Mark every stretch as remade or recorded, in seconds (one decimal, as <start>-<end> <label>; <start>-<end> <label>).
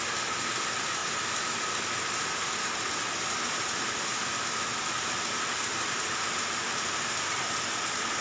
0.0-8.2 recorded